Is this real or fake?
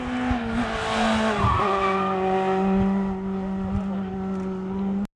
real